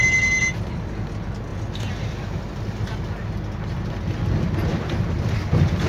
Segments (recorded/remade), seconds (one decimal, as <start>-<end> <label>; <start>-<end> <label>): 0.0-5.9 recorded